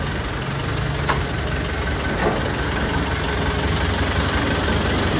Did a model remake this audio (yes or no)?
no